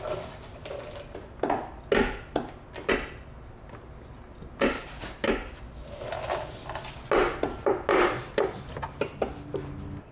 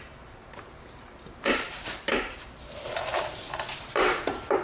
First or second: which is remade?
second